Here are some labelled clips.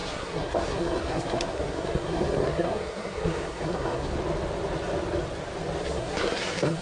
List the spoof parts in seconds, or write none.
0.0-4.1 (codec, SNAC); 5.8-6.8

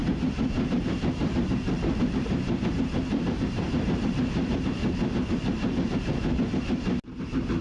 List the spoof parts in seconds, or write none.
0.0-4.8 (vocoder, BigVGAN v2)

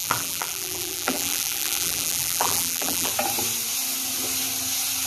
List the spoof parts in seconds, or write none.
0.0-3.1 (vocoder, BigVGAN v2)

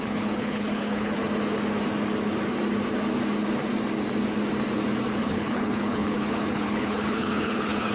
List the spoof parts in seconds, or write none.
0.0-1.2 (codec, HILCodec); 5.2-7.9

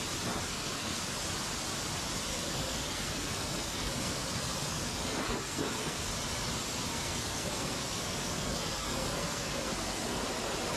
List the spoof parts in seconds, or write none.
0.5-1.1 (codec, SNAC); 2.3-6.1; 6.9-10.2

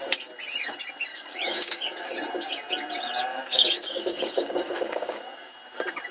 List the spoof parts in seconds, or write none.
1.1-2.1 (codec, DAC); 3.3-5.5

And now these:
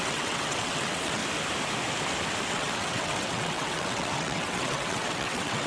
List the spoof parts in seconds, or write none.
0.0-1.2 (vocoder, WaveNeXt); 2.5-5.7